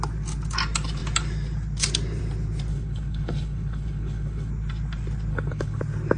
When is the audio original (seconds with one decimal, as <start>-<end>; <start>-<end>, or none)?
0.0-2.7; 4.5-5.3; 5.8-6.2